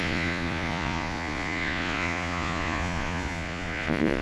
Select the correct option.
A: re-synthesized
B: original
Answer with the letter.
A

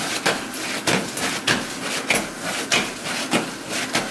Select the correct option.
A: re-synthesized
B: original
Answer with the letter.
B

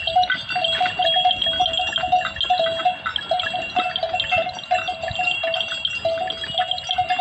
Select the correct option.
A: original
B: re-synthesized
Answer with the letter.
A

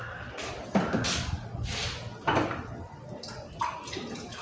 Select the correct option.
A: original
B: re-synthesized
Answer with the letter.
A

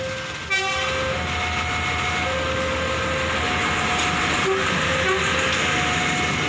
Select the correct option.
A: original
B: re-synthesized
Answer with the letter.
A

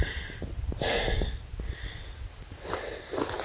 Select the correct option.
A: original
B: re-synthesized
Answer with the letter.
A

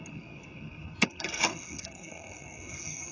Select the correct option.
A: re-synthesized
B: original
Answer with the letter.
A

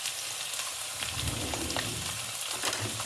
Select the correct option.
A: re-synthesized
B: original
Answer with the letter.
B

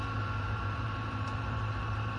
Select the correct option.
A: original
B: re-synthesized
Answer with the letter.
B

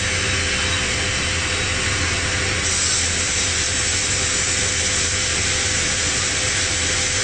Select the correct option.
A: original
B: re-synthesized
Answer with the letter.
A